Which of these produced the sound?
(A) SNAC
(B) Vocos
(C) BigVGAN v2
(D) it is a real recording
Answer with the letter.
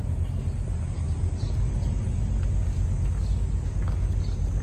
D